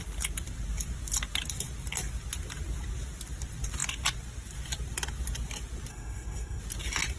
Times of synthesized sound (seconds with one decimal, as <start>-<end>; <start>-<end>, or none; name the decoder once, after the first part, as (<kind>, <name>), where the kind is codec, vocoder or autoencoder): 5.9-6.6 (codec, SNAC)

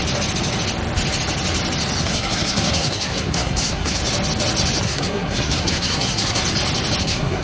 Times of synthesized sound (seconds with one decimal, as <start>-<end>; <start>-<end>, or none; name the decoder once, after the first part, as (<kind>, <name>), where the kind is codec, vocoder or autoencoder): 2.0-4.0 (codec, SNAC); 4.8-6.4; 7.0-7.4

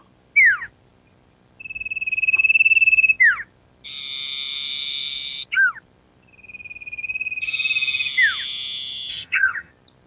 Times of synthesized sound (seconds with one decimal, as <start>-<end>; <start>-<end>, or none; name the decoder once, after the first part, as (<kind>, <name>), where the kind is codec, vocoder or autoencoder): 9.1-9.7 (vocoder, HiFi-GAN)

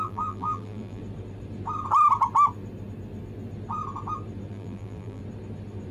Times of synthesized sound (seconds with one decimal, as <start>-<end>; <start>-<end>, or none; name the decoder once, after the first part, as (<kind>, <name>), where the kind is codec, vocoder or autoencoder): 0.0-1.0 (vocoder, BigVGAN v2); 4.5-5.2

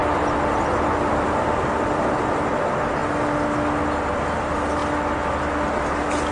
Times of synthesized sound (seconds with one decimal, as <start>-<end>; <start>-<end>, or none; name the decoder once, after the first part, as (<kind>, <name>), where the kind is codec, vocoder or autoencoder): 1.6-3.0 (vocoder, BigVGAN v2); 4.1-4.8

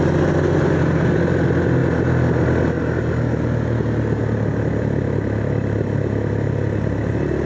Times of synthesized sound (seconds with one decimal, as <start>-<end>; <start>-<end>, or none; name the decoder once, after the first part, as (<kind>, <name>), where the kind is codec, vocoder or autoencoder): none

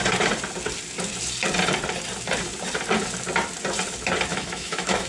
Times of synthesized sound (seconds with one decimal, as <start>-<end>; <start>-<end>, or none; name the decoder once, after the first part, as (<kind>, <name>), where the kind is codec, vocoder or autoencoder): 4.3-5.1 (autoencoder, DAC-VAE)